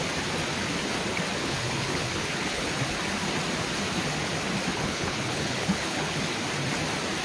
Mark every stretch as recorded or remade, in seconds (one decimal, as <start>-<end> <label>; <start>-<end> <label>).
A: 0.0-1.4 recorded; 1.4-2.7 remade; 2.7-4.7 recorded; 4.7-6.2 remade; 6.2-7.2 recorded